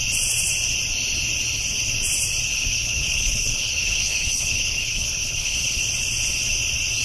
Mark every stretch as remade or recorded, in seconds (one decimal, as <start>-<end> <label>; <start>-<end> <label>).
0.0-2.5 recorded; 2.5-5.8 remade; 5.8-7.0 recorded